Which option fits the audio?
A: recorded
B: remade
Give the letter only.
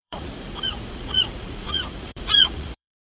B